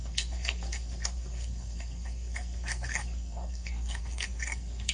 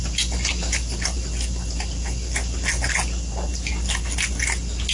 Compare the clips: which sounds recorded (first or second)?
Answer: second